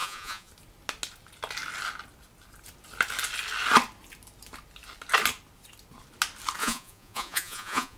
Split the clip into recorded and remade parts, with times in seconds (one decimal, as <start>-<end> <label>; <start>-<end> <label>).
0.0-0.5 remade; 0.5-6.6 recorded; 6.6-8.0 remade

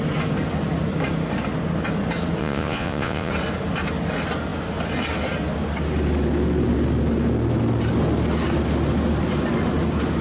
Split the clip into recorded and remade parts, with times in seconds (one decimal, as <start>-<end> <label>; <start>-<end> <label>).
0.0-2.4 recorded; 2.4-3.3 remade; 3.3-10.2 recorded

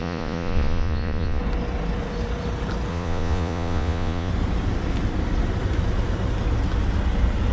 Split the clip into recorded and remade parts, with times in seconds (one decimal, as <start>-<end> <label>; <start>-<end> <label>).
0.0-1.4 remade; 1.4-2.9 recorded; 2.9-4.3 remade; 4.3-7.5 recorded

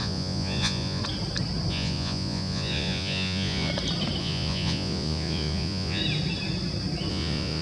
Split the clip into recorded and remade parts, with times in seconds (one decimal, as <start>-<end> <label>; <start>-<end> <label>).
0.0-1.0 remade; 1.0-1.7 recorded; 1.7-3.7 remade; 3.7-4.2 recorded; 4.2-6.0 remade; 6.0-7.1 recorded; 7.1-7.6 remade